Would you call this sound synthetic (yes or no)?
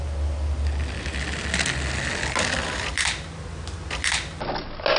no